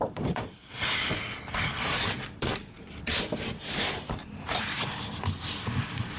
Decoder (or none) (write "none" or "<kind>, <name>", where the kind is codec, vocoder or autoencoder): vocoder, BigVGAN v2